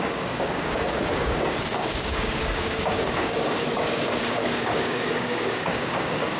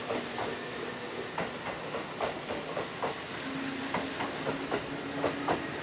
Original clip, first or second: second